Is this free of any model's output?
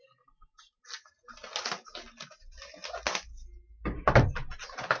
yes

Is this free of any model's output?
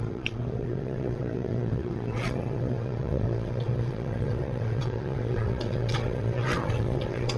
no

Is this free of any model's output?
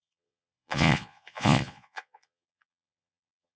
no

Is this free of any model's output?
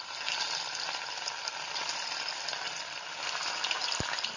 yes